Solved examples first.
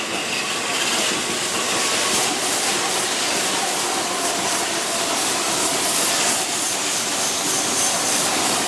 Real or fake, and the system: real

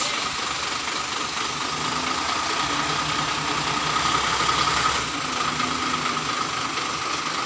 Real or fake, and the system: real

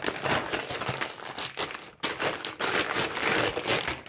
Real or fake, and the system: real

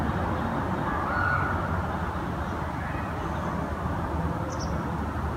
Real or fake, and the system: real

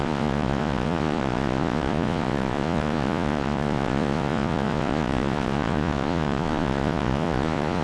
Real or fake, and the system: fake, vocoder, Vocos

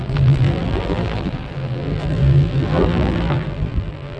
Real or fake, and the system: fake, vocoder, BigVGAN v2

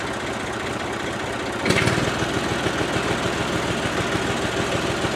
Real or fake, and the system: real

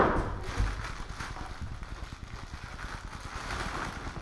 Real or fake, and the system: real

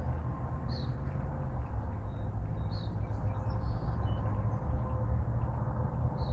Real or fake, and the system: real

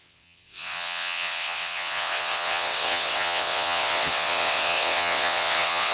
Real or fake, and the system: fake, vocoder, WaveNeXt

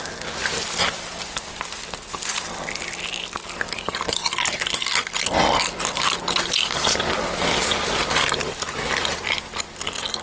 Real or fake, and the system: real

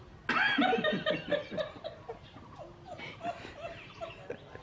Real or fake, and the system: real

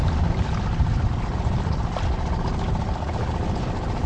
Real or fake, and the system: real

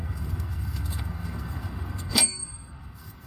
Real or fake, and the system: fake, codec, SNAC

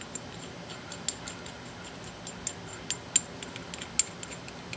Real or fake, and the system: real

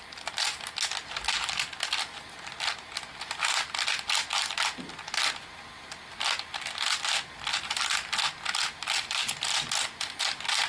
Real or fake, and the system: real